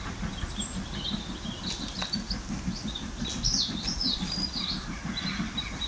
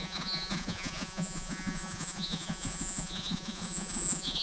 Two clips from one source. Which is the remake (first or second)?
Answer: second